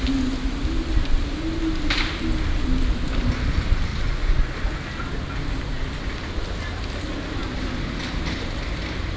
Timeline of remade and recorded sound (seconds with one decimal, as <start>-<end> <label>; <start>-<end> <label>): 0.0-3.9 recorded; 3.9-4.5 remade; 4.5-9.2 recorded